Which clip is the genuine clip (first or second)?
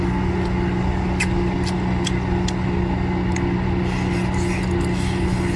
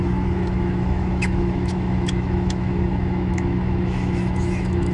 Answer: first